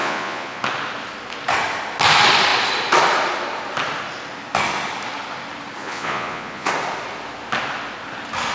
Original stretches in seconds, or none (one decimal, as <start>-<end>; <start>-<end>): 0.6-5.8; 6.7-8.5